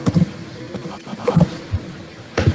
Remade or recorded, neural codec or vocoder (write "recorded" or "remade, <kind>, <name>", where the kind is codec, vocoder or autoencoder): remade, vocoder, BigVGAN v2